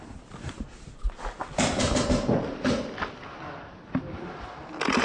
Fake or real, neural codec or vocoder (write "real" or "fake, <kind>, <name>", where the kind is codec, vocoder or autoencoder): real